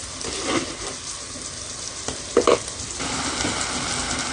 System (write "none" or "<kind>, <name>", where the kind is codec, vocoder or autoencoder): none